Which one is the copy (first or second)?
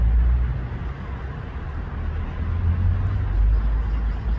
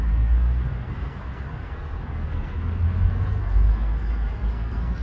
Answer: second